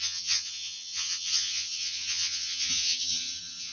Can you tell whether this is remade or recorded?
remade